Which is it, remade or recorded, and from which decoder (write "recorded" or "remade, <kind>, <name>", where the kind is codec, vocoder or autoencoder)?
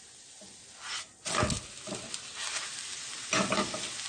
recorded